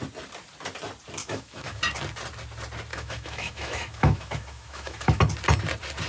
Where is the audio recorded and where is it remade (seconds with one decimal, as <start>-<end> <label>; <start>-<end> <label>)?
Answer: 0.0-1.2 recorded; 1.2-1.8 remade; 1.8-2.9 recorded; 2.9-5.2 remade; 5.2-6.1 recorded